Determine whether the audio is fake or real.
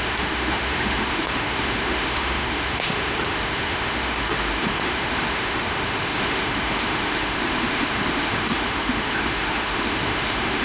fake